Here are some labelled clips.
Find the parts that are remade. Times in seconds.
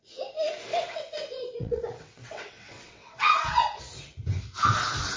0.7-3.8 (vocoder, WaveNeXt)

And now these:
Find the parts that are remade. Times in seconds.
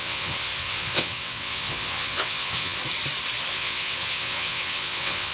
0.0-2.8 (vocoder, WaveNeXt); 3.5-5.3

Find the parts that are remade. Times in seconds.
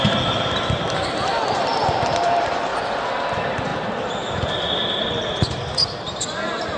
none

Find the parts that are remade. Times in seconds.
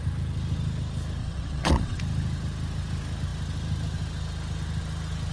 1.2-2.0 (vocoder, WaveNeXt)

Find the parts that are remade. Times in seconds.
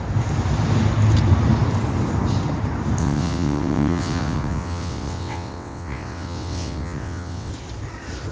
3.0-7.5 (vocoder, WaveNeXt)